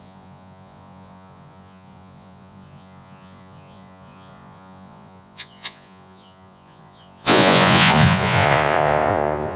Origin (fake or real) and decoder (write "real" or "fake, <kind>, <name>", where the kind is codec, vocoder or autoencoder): fake, vocoder, Vocos